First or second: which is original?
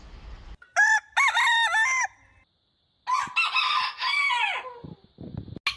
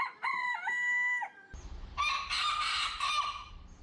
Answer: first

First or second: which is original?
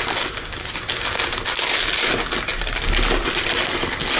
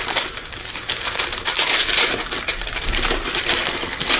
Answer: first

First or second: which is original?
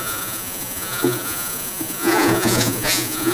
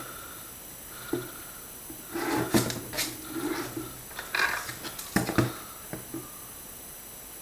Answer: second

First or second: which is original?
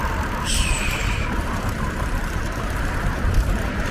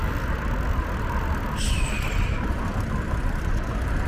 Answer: second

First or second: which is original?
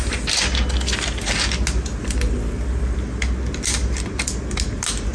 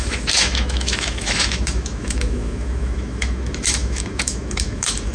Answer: first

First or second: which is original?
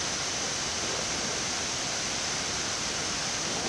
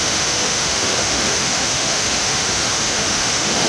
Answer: first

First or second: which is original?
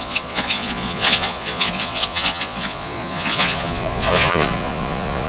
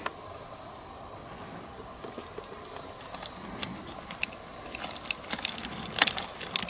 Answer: second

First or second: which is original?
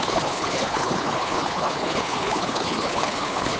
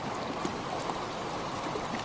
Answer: second